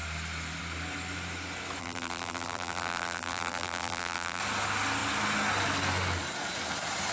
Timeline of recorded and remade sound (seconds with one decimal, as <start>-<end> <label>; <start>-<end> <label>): 0.0-1.8 recorded; 1.8-4.4 remade; 4.4-7.1 recorded